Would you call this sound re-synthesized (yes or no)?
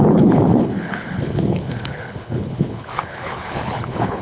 yes